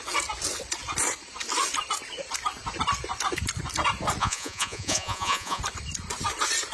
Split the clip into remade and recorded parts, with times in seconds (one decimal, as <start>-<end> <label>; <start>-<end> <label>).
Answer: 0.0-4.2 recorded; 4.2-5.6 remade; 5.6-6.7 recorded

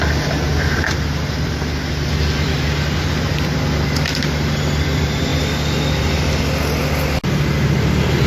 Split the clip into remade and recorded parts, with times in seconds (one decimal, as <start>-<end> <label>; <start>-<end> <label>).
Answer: 0.0-8.3 recorded

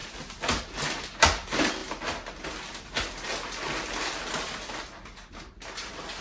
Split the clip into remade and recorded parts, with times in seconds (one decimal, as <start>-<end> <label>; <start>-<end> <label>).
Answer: 0.0-6.2 recorded

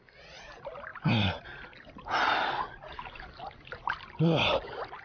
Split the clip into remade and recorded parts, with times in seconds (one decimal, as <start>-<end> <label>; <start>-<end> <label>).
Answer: 0.0-5.0 recorded

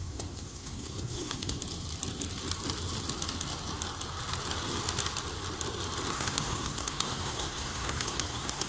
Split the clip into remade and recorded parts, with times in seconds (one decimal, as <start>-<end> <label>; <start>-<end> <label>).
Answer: 0.0-1.6 remade; 1.6-6.1 recorded; 6.1-8.7 remade

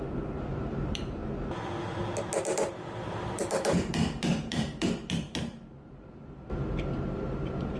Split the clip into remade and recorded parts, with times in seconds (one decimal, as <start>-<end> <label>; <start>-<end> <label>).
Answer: 0.0-1.2 remade; 1.2-2.4 recorded; 2.4-7.8 remade